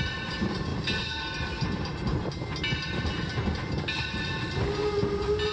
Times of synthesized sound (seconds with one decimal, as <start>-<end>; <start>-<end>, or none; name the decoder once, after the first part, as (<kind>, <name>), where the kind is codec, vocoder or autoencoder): none